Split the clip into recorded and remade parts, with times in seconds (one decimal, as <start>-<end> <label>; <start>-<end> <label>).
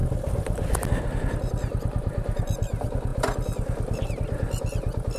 0.0-1.0 remade; 1.0-1.7 recorded; 1.7-2.4 remade; 2.4-5.2 recorded